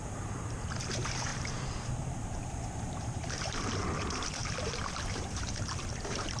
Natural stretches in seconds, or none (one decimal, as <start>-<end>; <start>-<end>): none